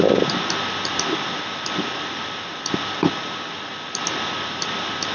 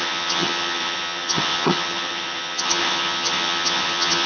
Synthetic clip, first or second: second